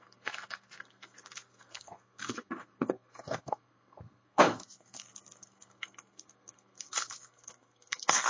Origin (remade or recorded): remade